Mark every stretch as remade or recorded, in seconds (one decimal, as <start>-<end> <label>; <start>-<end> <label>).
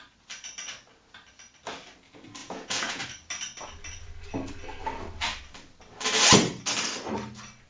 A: 0.0-2.4 recorded; 2.4-3.0 remade; 3.0-7.7 recorded